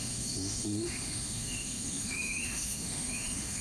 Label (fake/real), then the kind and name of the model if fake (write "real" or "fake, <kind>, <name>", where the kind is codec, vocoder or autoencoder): fake, autoencoder, DAC-VAE